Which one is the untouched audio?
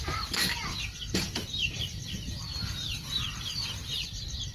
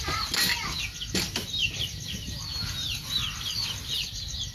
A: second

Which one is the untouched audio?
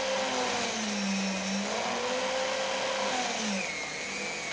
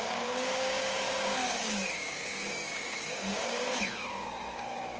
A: first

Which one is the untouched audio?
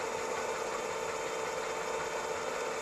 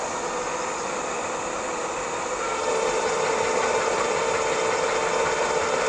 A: first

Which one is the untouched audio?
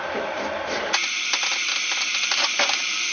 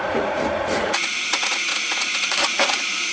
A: first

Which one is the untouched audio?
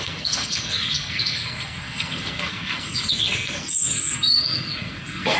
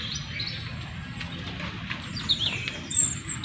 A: second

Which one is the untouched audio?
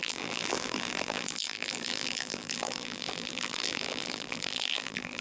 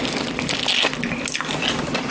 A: second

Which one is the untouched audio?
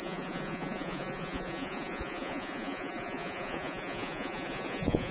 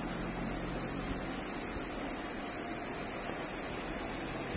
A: second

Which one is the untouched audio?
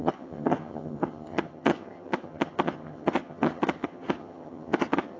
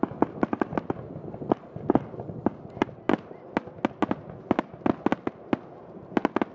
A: second